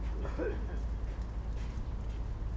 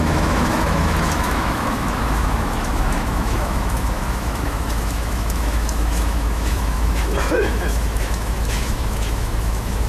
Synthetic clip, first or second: second